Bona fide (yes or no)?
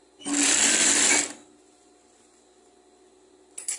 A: yes